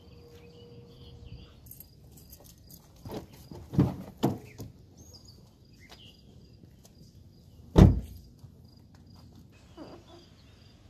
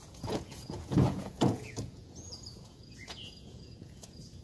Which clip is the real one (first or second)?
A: first